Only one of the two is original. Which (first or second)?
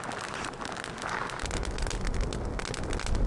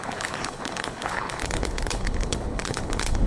first